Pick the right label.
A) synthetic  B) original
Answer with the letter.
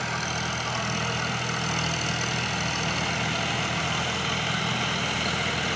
B